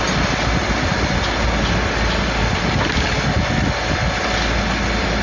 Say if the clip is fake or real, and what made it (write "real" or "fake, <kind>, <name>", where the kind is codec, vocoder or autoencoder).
real